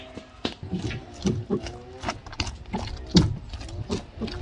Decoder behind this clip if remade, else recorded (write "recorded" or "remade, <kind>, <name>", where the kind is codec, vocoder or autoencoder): recorded